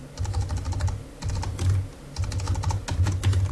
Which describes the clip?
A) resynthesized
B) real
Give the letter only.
B